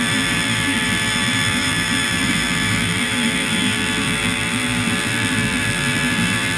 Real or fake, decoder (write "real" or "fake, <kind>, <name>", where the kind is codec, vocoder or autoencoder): fake, vocoder, BigVGAN v2